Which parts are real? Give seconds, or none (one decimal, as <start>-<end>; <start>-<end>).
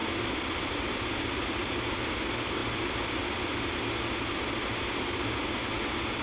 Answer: 0.0-6.2